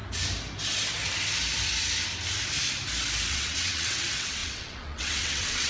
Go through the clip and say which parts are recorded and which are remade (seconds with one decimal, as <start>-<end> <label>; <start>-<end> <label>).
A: 0.0-3.3 recorded; 3.3-5.7 remade